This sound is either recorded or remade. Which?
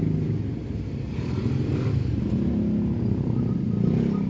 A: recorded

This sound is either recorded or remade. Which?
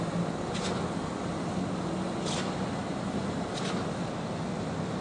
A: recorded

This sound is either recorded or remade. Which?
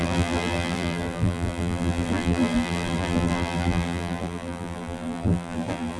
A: remade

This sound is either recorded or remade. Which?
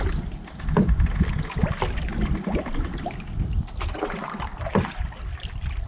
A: recorded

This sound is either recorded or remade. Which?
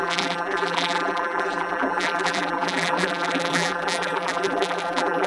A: remade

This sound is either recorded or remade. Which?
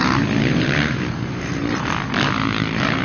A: remade